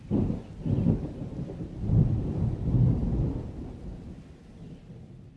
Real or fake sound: real